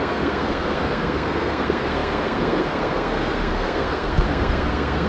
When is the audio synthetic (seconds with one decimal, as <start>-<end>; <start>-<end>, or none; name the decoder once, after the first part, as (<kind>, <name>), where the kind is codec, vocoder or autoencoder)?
0.0-5.1 (codec, SNAC)